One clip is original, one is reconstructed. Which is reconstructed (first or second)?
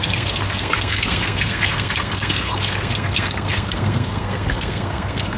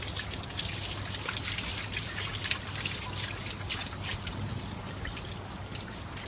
first